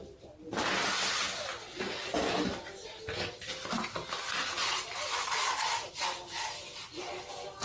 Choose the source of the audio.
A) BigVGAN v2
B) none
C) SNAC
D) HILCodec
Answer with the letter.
B